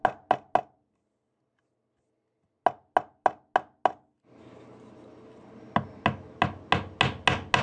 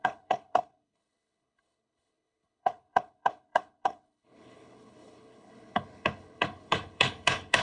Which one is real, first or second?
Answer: first